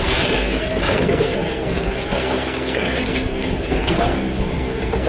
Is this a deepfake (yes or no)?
yes